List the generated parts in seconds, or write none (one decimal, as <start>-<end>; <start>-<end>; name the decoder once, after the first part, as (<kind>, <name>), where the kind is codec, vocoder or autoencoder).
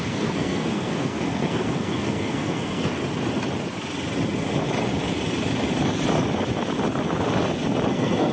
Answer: 0.0-2.9 (codec, SNAC); 7.9-8.3